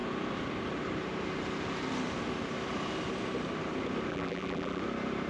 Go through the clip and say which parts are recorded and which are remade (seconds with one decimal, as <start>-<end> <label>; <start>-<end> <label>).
0.0-4.1 recorded; 4.1-4.8 remade; 4.8-5.3 recorded